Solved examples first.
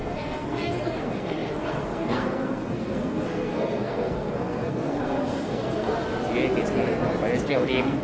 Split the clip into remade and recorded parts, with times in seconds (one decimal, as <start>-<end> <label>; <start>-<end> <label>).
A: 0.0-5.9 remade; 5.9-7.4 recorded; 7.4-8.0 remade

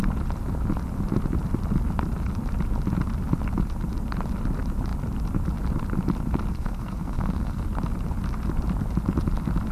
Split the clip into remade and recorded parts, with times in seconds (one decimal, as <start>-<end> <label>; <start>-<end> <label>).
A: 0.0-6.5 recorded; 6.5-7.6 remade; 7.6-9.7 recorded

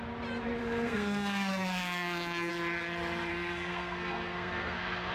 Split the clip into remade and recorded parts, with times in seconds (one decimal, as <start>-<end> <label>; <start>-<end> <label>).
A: 0.0-0.6 recorded; 0.6-2.5 remade; 2.5-3.3 recorded; 3.3-5.1 remade

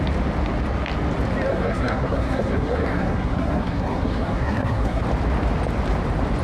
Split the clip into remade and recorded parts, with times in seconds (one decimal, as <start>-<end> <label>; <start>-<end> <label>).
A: 0.0-1.5 recorded; 1.5-5.0 remade; 5.0-6.4 recorded

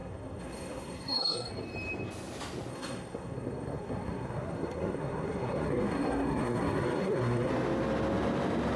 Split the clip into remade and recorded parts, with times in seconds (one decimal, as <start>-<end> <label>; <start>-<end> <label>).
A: 0.0-1.5 remade; 1.5-2.7 recorded; 2.7-7.5 remade; 7.5-8.8 recorded